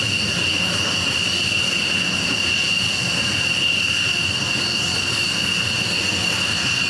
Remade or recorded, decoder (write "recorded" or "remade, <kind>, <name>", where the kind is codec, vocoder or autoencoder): recorded